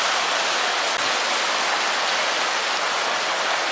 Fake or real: real